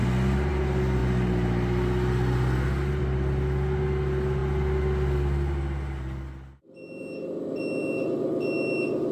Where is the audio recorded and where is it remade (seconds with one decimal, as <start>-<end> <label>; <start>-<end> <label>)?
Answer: 0.0-9.1 recorded